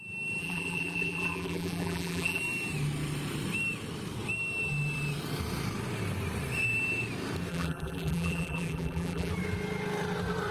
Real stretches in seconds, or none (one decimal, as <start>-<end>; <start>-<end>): 0.0-0.4; 2.4-7.5; 9.3-10.5